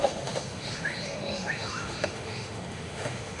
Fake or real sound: fake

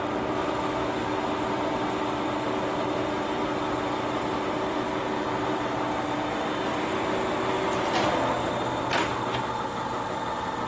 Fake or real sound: real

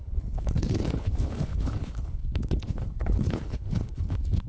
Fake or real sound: fake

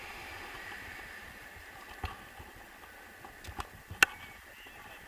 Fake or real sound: real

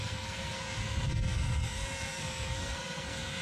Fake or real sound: fake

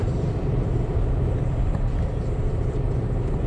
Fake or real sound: fake